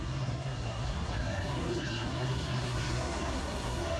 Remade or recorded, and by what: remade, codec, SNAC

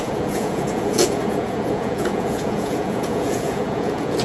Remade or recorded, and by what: remade, vocoder, Vocos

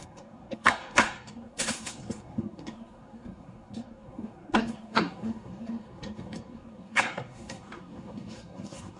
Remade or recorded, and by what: remade, codec, SNAC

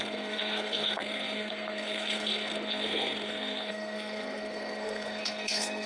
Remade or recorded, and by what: remade, codec, SNAC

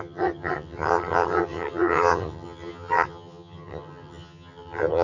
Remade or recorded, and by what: remade, vocoder, HiFi-GAN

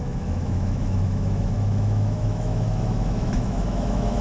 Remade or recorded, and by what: remade, autoencoder, DAC-VAE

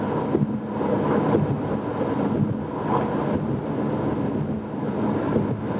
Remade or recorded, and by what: recorded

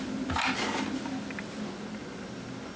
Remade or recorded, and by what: recorded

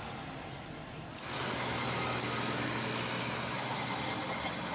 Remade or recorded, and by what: recorded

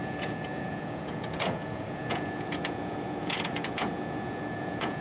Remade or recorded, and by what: remade, vocoder, Vocos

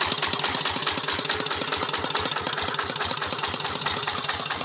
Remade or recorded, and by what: recorded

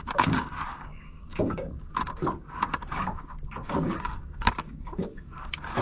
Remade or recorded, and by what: remade, codec, DAC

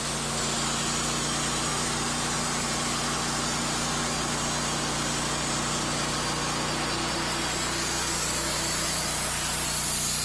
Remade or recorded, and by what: recorded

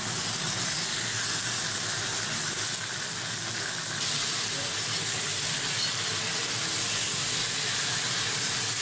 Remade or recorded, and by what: recorded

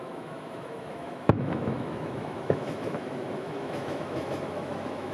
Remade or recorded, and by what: remade, autoencoder, DAC-VAE